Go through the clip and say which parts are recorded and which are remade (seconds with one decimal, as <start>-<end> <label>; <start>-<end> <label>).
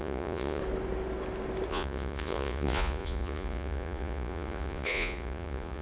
0.0-0.6 remade; 0.6-1.7 recorded; 1.7-5.8 remade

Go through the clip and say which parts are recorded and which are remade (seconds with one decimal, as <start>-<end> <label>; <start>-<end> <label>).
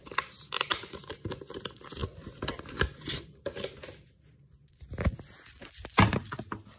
0.0-4.4 remade; 4.4-6.8 recorded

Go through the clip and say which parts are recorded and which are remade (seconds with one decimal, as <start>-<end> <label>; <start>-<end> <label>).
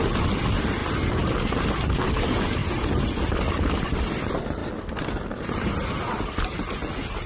0.0-7.3 recorded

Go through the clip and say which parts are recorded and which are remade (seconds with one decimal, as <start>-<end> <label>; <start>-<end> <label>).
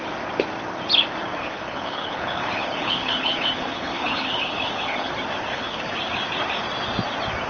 0.0-1.4 recorded; 1.4-5.1 remade; 5.1-5.5 recorded; 5.5-6.0 remade; 6.0-7.5 recorded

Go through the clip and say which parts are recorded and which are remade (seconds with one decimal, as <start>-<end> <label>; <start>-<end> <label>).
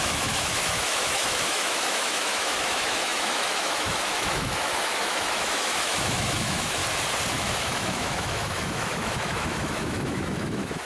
0.0-6.8 remade; 6.8-7.3 recorded; 7.3-10.9 remade